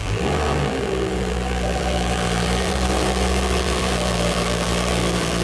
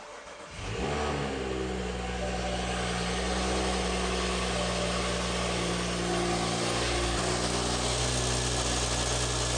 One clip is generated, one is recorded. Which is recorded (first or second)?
second